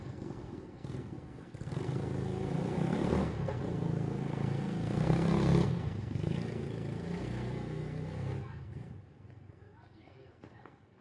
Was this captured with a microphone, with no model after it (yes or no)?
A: no